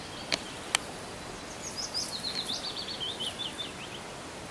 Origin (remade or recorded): recorded